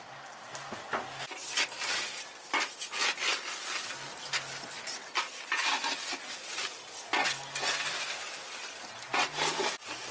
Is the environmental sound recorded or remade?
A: recorded